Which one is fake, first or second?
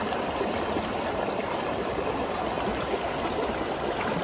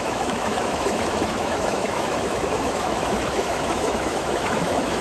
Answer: second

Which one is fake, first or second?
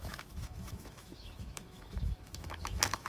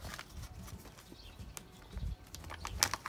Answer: first